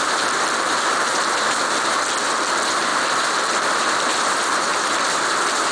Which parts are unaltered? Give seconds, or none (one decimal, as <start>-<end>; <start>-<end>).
0.0-5.7